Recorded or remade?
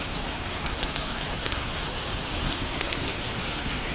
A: remade